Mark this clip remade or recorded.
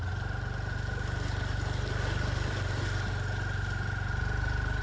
recorded